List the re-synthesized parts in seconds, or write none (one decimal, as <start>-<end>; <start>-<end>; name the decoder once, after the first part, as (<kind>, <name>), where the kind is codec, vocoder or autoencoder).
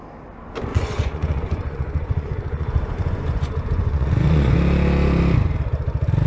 0.7-4.5 (vocoder, Vocos)